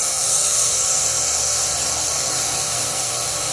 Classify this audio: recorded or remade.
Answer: remade